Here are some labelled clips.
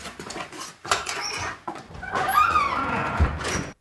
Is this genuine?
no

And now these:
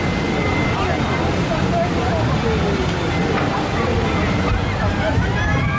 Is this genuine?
yes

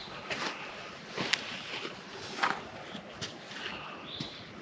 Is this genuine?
yes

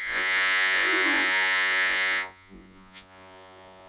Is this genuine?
no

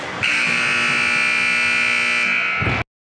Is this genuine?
yes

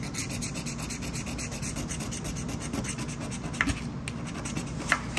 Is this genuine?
yes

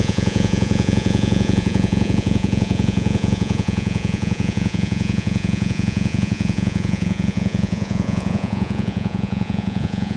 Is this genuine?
no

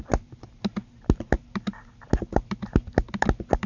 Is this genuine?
yes